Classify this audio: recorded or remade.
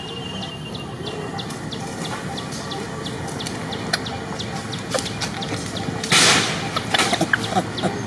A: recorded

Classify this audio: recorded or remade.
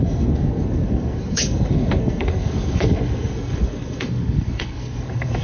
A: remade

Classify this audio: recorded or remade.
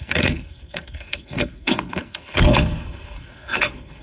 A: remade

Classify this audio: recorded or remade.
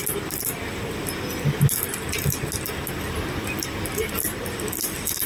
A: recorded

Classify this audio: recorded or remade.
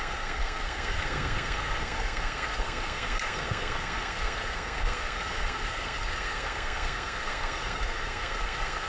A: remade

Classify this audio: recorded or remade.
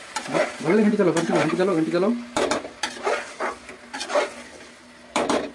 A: recorded